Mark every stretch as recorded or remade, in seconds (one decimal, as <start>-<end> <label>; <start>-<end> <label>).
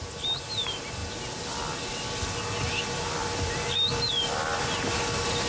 0.0-5.5 recorded